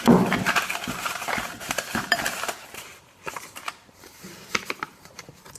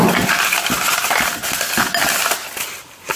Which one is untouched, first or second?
second